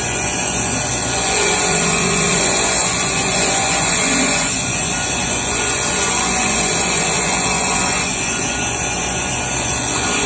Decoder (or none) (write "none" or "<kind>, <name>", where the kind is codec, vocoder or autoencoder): vocoder, Vocos